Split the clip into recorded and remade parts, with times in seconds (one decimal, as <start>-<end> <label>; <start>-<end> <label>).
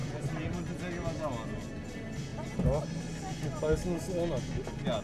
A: 0.0-5.0 recorded